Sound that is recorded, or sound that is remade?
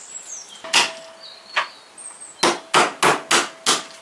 recorded